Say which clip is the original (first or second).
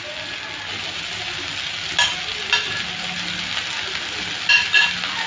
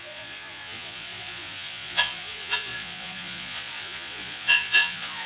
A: first